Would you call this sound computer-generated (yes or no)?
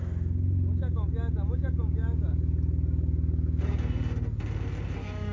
no